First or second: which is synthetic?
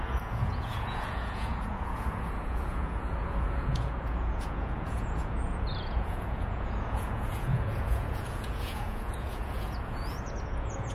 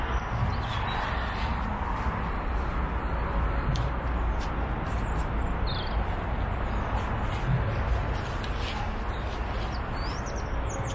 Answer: first